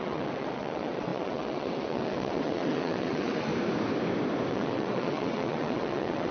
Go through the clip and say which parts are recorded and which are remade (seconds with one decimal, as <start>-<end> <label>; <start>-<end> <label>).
0.0-3.5 remade; 3.5-4.5 recorded; 4.5-6.3 remade